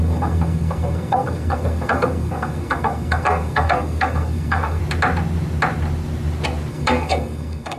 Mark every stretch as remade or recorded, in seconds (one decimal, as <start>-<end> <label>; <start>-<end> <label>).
0.0-4.8 remade; 4.8-6.7 recorded; 6.7-7.8 remade